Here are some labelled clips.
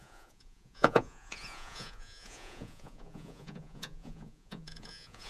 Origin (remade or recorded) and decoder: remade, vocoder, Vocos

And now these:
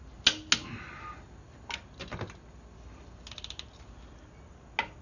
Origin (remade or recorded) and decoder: recorded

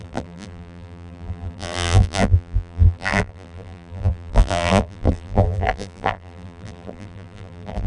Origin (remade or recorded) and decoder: remade, vocoder, BigVGAN v2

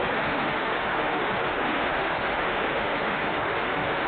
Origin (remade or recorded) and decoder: remade, autoencoder, DAC-VAE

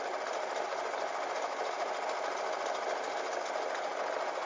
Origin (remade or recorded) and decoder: recorded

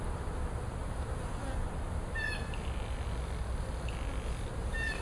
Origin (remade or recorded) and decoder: recorded